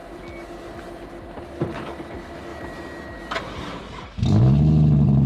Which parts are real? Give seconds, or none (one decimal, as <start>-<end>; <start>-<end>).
0.0-5.3